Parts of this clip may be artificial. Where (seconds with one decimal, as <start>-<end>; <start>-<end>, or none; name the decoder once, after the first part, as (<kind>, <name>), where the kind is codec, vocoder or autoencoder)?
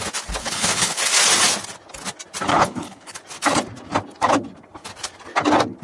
0.4-1.0 (codec, HILCodec); 2.5-3.2